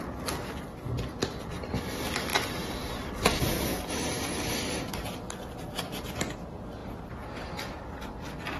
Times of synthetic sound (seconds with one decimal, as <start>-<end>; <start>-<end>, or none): 3.7-4.6